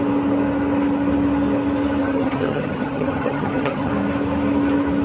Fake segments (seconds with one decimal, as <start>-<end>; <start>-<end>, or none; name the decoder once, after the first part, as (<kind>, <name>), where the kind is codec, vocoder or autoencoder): 2.0-3.9 (vocoder, HiFi-GAN)